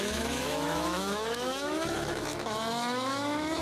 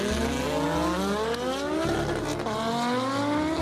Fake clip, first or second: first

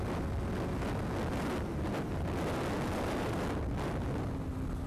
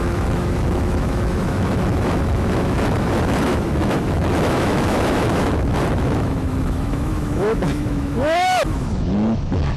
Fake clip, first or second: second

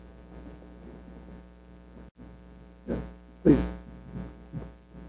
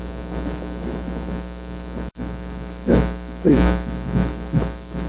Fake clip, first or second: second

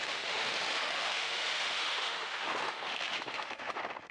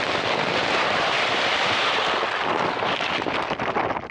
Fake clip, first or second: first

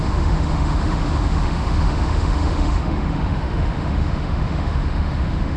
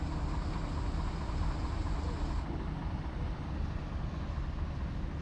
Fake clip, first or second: first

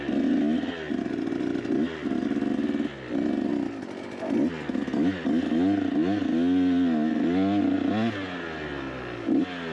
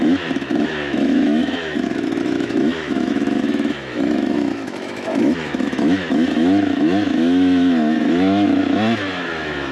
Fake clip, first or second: second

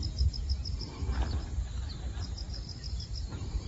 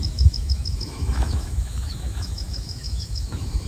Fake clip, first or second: second